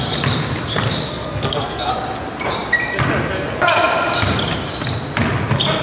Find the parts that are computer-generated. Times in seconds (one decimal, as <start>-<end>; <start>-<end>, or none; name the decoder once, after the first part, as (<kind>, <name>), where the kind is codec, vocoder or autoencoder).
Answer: 1.1-1.9 (codec, SNAC)